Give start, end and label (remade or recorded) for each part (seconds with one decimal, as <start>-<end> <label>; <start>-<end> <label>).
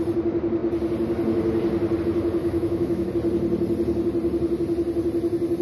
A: 0.0-2.4 recorded; 2.4-3.1 remade; 3.1-5.6 recorded